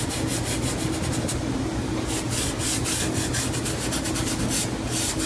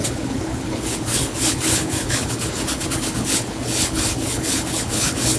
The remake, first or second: second